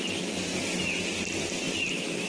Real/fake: real